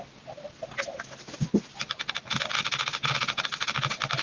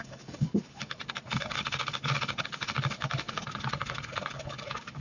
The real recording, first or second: first